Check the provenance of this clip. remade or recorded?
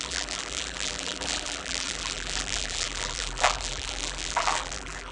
remade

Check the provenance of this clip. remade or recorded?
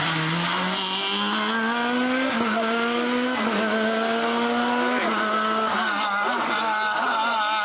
recorded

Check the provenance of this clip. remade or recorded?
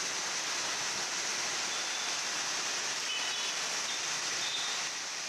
remade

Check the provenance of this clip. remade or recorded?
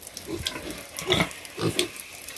remade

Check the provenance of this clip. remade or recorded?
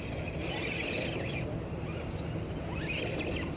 recorded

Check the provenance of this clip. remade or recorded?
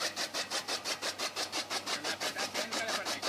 remade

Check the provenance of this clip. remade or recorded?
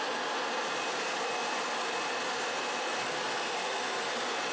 recorded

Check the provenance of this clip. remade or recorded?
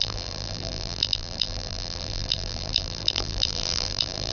remade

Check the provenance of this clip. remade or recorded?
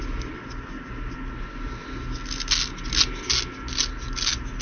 recorded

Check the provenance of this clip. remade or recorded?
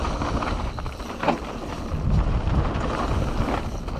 recorded